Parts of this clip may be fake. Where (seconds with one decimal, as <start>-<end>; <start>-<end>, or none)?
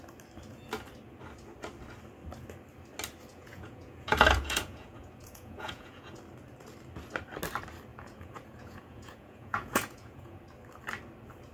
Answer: 3.3-6.2; 7.9-10.4